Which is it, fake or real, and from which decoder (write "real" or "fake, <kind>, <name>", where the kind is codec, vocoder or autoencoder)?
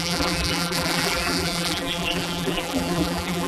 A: fake, vocoder, BigVGAN v2